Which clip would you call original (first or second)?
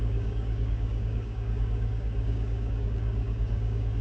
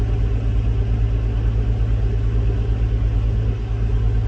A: second